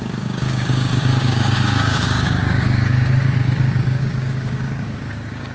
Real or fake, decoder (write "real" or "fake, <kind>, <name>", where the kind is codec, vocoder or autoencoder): fake, codec, DAC